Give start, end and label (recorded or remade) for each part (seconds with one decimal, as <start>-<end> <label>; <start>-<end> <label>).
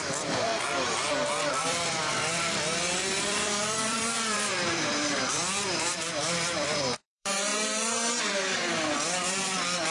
0.0-0.5 remade; 0.5-1.5 recorded; 1.5-7.5 remade; 7.5-8.2 recorded; 8.2-9.9 remade